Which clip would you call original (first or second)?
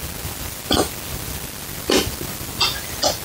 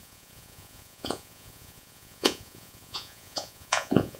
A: first